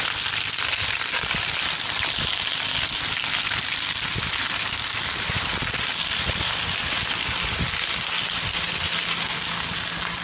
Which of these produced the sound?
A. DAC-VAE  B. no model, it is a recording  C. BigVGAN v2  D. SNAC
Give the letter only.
B